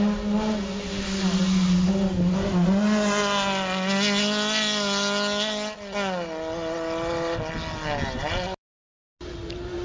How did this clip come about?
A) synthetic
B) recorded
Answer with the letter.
B